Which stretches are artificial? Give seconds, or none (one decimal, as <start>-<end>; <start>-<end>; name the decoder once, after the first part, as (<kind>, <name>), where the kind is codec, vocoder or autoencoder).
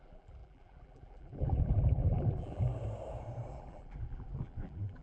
0.0-2.7 (vocoder, BigVGAN v2); 3.5-5.0